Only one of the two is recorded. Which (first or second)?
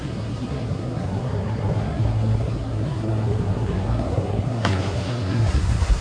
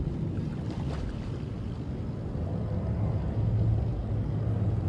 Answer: second